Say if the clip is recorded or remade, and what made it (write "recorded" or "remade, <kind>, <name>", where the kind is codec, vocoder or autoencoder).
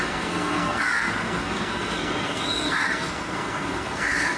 remade, codec, SNAC